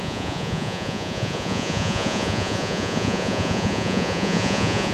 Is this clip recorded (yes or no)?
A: no